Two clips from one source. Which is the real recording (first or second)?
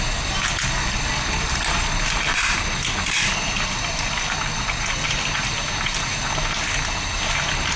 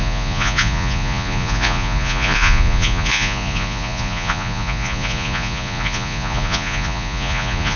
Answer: first